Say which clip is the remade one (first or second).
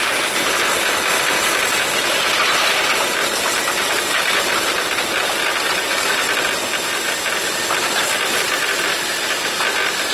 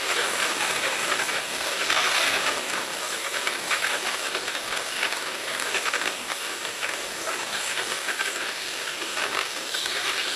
second